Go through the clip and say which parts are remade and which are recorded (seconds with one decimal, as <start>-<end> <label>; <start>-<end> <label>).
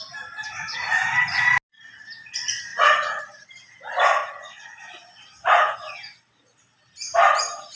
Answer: 0.0-2.7 recorded; 2.7-3.2 remade; 3.2-4.2 recorded; 4.2-4.8 remade; 4.8-7.8 recorded